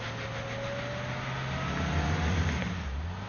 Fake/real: real